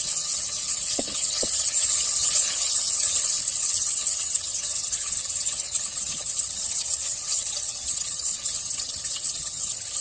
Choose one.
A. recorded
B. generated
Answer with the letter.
B